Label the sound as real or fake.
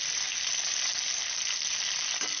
real